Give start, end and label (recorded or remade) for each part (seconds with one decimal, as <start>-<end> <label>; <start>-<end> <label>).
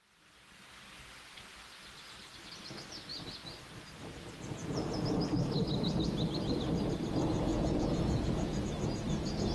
0.0-4.6 recorded; 4.6-5.1 remade; 5.1-7.5 recorded; 7.5-8.6 remade; 8.6-9.5 recorded